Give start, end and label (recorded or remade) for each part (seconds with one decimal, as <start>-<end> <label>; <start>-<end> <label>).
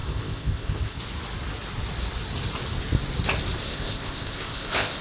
0.0-1.0 remade; 1.0-3.6 recorded; 3.6-5.0 remade